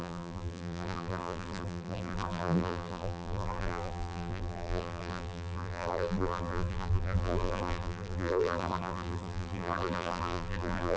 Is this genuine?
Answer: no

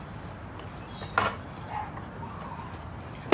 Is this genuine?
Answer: yes